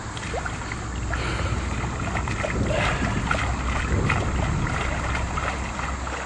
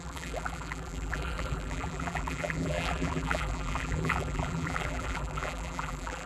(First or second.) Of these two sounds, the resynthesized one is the second